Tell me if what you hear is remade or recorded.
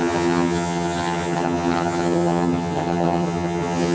remade